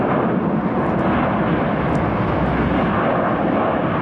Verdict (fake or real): real